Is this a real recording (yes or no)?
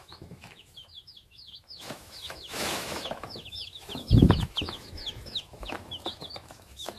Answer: no